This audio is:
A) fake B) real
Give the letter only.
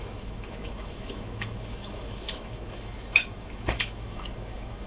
A